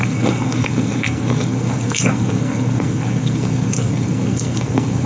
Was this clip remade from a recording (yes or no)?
yes